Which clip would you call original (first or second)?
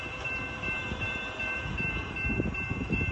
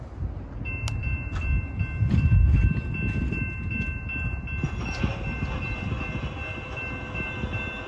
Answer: second